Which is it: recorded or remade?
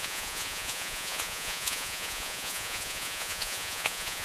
remade